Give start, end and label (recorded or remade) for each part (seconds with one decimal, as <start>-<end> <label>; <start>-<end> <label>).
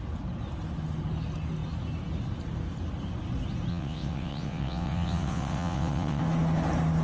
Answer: 0.0-3.7 recorded; 3.7-6.2 remade; 6.2-7.0 recorded